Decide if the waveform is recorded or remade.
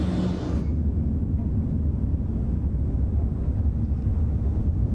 recorded